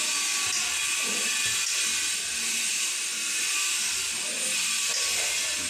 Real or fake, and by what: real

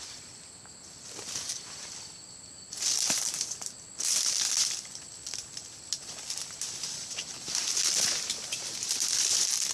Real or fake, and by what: real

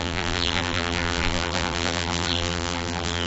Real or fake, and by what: fake, vocoder, BigVGAN v2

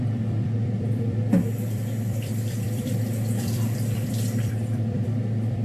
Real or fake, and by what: fake, vocoder, BigVGAN v2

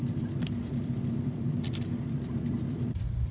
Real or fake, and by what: fake, vocoder, BigVGAN v2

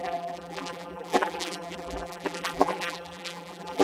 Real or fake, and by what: fake, vocoder, BigVGAN v2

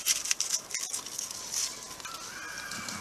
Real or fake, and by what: real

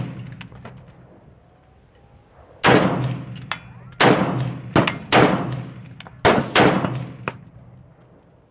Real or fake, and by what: real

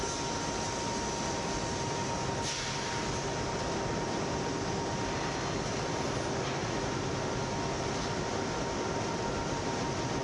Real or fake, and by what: real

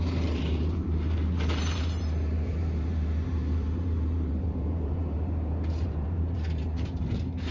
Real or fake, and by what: fake, vocoder, BigVGAN v2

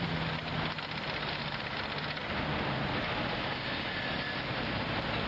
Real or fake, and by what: real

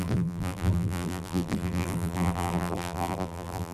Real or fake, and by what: fake, vocoder, BigVGAN v2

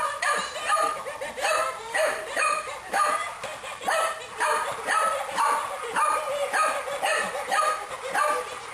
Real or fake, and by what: fake, vocoder, BigVGAN v2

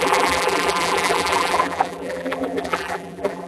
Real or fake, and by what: fake, vocoder, BigVGAN v2